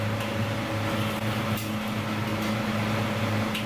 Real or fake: real